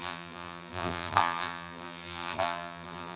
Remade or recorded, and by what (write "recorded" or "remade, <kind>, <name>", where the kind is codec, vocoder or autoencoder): remade, vocoder, BigVGAN v2